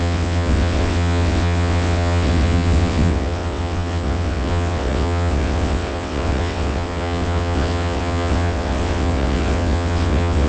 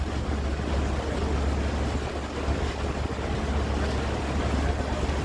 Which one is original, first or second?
second